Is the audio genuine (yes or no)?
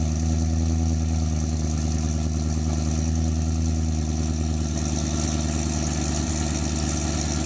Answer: yes